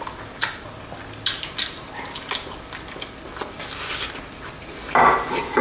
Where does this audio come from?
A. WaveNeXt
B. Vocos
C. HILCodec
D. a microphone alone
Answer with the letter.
D